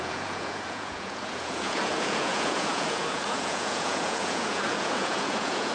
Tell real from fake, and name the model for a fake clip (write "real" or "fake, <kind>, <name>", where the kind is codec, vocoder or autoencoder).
fake, vocoder, Vocos